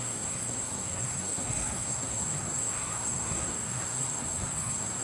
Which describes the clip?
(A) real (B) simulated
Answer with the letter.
B